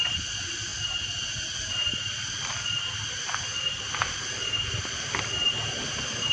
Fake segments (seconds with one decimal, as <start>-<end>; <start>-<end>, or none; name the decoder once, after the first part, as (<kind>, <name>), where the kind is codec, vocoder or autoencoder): none